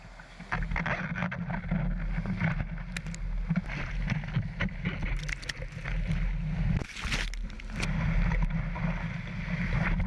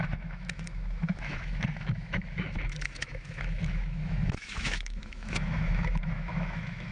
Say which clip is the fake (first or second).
second